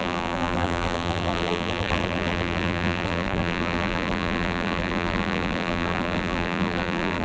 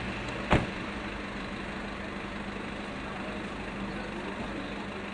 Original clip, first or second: second